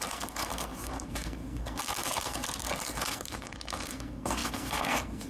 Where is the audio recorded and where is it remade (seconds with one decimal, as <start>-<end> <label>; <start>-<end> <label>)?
0.0-5.3 remade